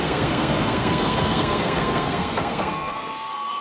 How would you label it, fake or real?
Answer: fake